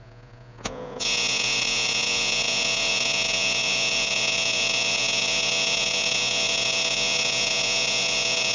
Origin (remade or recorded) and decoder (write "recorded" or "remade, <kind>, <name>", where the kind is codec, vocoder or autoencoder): remade, vocoder, Vocos